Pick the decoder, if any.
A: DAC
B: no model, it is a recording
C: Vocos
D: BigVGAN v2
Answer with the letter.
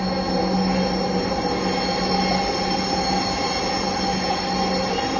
B